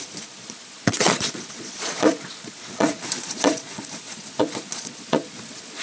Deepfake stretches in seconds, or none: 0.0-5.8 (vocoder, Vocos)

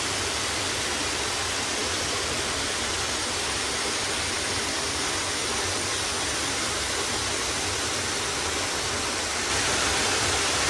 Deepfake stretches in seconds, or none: none

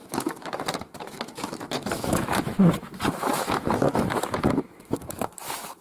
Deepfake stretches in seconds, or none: 0.0-5.8 (autoencoder, DAC-VAE)

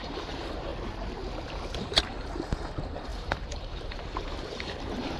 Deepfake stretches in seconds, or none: 0.0-0.7 (vocoder, BigVGAN v2); 1.8-5.2

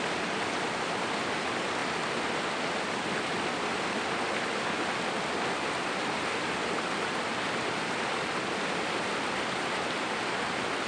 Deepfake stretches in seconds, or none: none

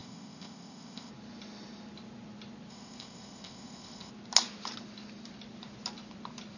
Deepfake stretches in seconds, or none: 0.0-1.1 (codec, ZipCodec); 2.7-4.1

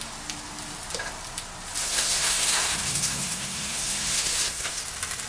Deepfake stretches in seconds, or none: 1.8-4.8 (codec, SNAC)

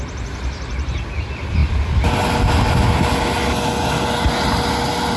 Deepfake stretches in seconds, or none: none